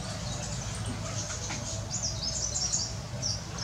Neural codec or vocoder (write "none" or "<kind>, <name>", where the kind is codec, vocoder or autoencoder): none